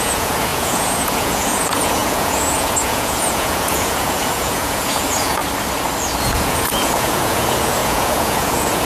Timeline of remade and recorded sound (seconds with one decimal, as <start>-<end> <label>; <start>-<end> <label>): 0.0-5.4 remade; 5.4-6.2 recorded; 6.2-8.8 remade